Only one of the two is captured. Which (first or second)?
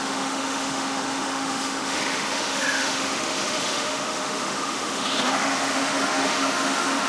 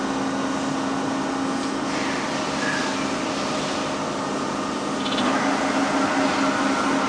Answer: second